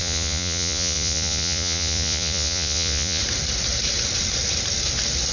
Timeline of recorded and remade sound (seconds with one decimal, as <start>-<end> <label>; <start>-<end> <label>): 0.0-3.2 remade; 3.2-5.3 recorded